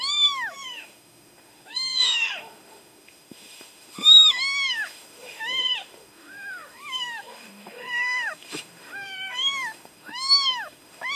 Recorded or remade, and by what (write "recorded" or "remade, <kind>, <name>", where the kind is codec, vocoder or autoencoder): remade, autoencoder, DAC-VAE